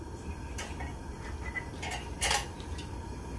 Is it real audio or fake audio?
real